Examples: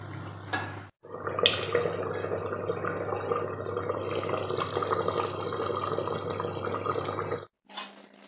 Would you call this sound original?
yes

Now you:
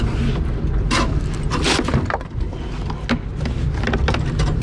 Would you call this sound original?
yes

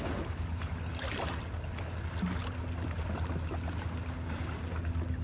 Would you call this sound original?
yes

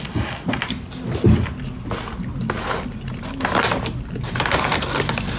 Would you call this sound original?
yes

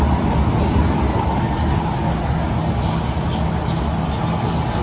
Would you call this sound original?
yes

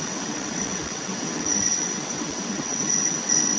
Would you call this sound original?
no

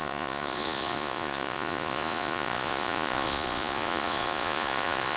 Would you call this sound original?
no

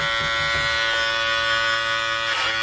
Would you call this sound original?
yes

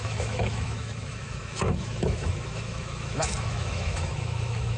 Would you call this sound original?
no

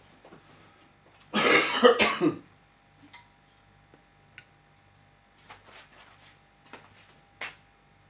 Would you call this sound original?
yes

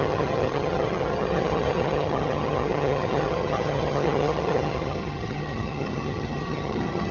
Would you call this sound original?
no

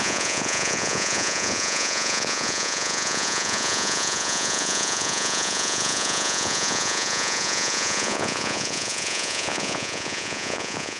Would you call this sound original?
no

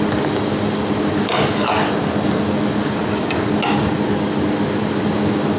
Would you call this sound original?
yes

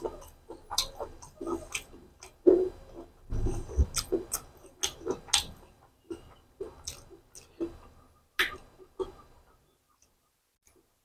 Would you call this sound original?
yes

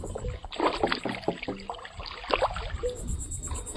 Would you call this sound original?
yes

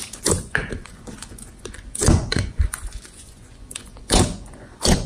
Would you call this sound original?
no